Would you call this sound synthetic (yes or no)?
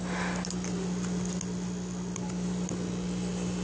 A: no